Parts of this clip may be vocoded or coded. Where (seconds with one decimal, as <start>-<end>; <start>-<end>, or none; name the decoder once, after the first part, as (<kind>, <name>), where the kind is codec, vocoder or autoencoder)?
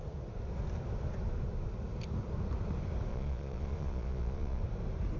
3.1-4.6 (vocoder, Vocos)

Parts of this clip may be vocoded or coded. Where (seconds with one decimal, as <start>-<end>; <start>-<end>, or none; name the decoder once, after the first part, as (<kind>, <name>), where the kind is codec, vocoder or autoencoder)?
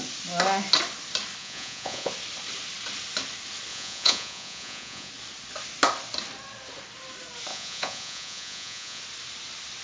1.4-2.1 (vocoder, Vocos); 3.7-5.1; 7.5-9.0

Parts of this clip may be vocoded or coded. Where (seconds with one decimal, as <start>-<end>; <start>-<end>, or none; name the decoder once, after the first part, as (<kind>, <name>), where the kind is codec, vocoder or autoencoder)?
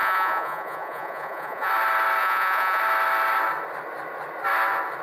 0.0-1.7 (vocoder, Vocos); 2.2-2.8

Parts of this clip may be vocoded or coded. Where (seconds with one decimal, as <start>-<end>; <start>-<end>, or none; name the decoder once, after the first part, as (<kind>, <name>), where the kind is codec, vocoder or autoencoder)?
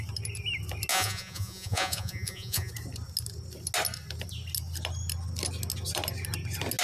0.9-2.7 (vocoder, Vocos)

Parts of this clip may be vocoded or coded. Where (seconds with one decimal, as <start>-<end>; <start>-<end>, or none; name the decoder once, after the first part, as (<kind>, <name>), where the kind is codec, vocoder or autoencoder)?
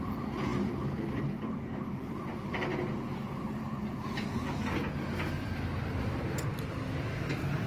none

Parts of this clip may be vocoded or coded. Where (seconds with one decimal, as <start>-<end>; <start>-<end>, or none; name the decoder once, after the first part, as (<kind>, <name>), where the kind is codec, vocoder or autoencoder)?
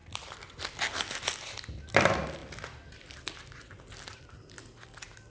none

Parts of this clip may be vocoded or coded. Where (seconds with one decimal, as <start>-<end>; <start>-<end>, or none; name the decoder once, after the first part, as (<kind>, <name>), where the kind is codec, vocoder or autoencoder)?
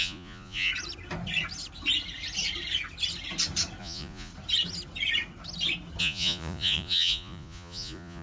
0.0-0.7 (vocoder, Vocos); 3.8-4.3; 6.0-8.2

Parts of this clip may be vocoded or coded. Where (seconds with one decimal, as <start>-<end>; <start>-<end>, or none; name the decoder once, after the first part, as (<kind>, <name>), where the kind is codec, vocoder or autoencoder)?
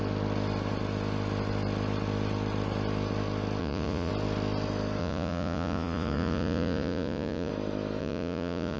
3.6-4.1 (vocoder, Vocos); 5.0-7.5; 8.0-8.8